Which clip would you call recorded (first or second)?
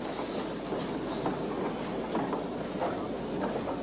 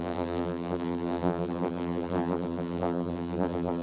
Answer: first